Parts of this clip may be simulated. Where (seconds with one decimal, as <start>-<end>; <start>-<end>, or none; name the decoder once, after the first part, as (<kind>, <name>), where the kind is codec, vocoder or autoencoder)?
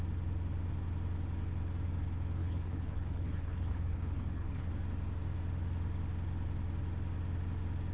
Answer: 2.4-4.7 (codec, HILCodec)